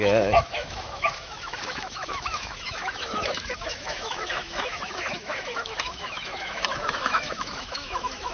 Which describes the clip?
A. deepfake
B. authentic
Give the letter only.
A